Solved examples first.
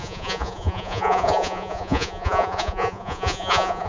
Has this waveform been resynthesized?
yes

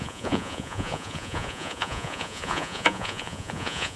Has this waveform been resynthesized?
yes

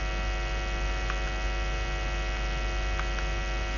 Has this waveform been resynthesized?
no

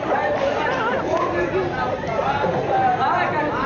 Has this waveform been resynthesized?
no